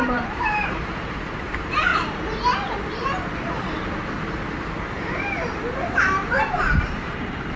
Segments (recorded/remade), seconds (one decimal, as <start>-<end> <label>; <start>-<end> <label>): 0.0-1.9 remade; 1.9-6.0 recorded; 6.0-7.6 remade